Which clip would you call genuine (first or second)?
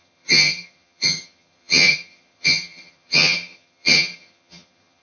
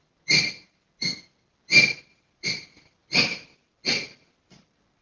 second